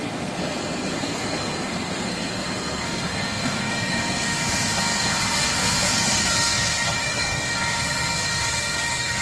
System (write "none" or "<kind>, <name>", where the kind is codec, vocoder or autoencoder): codec, SNAC